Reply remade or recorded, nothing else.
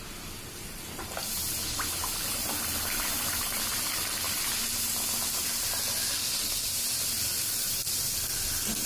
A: remade